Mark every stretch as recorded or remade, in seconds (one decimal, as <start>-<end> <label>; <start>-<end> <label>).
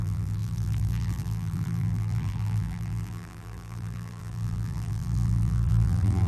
0.0-6.3 remade